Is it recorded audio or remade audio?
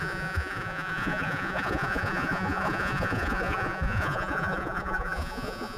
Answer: remade